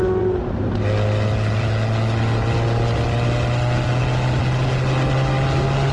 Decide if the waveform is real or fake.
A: real